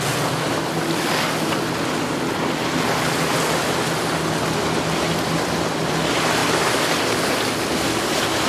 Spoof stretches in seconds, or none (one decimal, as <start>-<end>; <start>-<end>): none